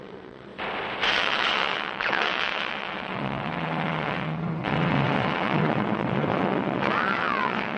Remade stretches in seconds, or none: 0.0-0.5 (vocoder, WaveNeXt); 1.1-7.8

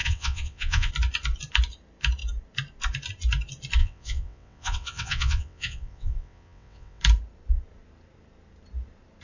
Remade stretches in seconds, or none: 0.0-0.9 (vocoder, WaveNeXt); 3.8-7.0

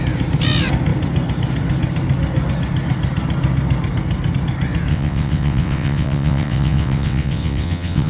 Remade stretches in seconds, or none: 4.9-8.1 (vocoder, WaveNeXt)